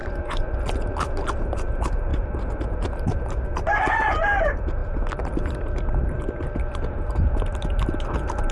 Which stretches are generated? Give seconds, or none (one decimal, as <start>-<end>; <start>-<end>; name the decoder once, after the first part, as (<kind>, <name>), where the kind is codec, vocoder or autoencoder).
0.0-0.6 (vocoder, Vocos)